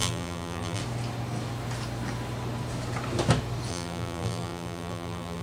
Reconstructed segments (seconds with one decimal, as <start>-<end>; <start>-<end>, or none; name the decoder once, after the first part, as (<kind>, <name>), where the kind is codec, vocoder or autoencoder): 0.0-0.8 (vocoder, BigVGAN v2); 3.7-5.4